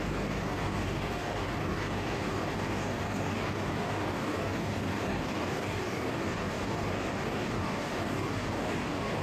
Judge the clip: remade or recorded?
remade